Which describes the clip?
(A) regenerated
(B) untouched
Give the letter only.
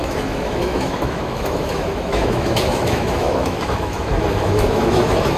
A